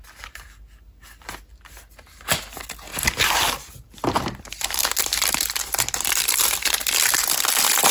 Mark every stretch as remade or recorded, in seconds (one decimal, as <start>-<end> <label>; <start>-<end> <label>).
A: 0.0-7.9 recorded